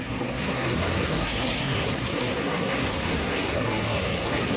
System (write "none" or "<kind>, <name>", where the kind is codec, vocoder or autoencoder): codec, SNAC